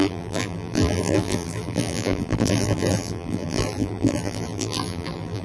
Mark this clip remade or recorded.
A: remade